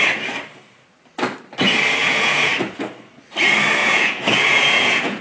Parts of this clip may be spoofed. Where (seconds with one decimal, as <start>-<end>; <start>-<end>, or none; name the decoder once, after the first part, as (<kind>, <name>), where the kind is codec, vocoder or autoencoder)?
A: 2.0-2.5 (vocoder, Vocos); 3.8-5.2